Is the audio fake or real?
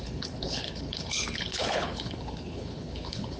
fake